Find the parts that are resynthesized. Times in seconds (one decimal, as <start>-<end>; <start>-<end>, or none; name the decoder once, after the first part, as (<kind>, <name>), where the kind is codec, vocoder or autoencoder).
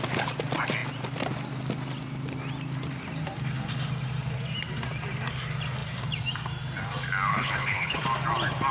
7.3-8.0 (codec, HILCodec)